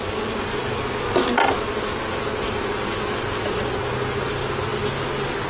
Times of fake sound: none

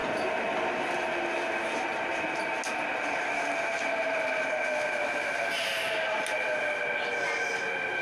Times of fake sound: none

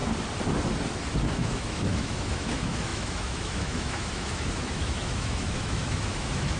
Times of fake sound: 1.3-6.6 (autoencoder, DAC-VAE)

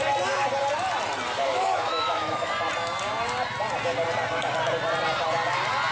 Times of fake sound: 1.4-2.5 (autoencoder, DAC-VAE)

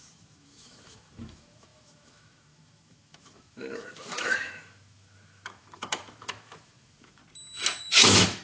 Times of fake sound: 0.0-7.2 (autoencoder, DAC-VAE); 7.8-8.4

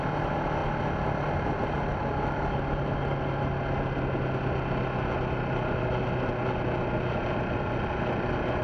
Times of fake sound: none

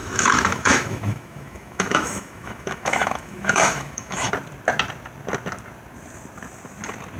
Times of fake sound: 0.0-4.3 (autoencoder, DAC-VAE)

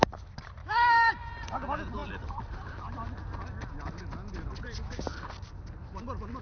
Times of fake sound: 0.6-1.1 (autoencoder, DAC-VAE)